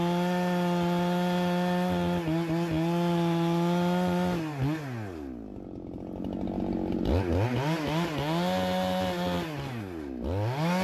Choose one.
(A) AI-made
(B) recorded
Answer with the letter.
B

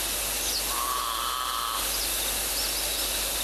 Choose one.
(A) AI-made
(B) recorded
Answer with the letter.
B